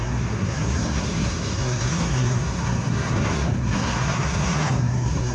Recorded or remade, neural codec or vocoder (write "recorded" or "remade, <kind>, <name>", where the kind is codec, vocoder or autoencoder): remade, codec, SNAC